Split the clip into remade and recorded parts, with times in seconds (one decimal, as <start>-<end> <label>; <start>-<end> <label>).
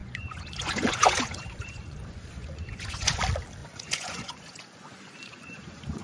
0.0-3.2 remade; 3.2-3.6 recorded; 3.6-6.0 remade